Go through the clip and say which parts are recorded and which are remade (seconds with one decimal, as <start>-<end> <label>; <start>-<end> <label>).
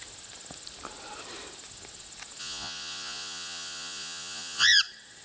0.0-2.4 recorded; 2.4-4.8 remade; 4.8-5.2 recorded